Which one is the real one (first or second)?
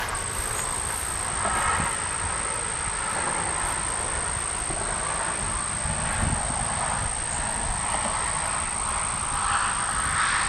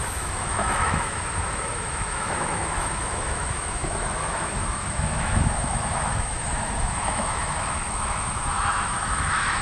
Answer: first